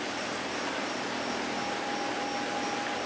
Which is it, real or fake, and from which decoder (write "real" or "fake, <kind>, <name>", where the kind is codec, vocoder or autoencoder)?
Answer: real